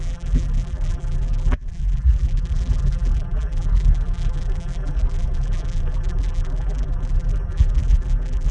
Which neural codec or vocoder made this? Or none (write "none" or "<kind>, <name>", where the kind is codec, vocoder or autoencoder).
vocoder, BigVGAN v2